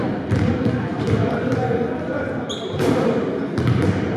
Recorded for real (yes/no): yes